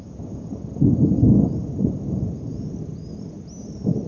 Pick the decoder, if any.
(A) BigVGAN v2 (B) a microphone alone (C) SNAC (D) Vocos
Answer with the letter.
B